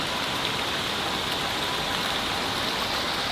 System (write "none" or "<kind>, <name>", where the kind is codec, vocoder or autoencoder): none